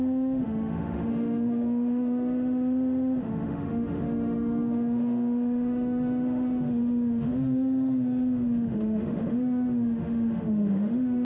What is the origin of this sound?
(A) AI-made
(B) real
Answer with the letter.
A